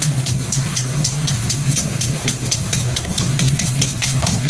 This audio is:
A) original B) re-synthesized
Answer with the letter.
B